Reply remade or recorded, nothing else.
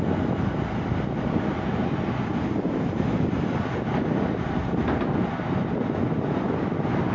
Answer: recorded